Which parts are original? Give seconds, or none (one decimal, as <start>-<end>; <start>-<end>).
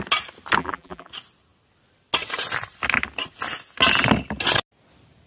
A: 0.0-0.6; 1.1-5.3